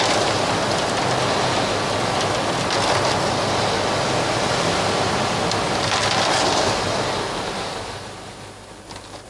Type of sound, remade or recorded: recorded